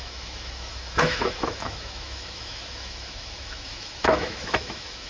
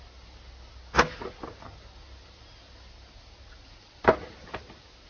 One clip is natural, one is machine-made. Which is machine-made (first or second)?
first